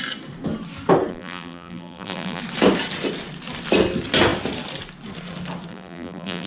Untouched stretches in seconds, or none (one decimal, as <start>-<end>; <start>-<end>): 0.0-1.1; 2.4-5.7